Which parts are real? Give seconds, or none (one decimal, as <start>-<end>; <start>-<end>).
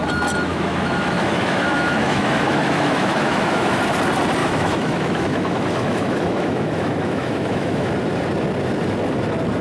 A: 0.0-0.5; 3.8-4.4; 7.9-9.6